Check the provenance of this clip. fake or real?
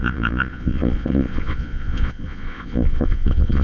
fake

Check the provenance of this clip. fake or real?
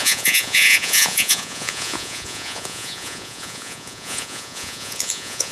fake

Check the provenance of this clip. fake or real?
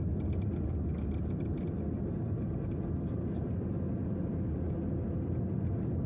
real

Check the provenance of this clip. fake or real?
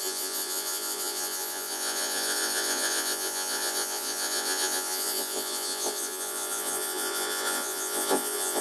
fake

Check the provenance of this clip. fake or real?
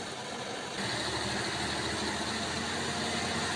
real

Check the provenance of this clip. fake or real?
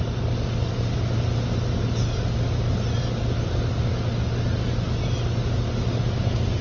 real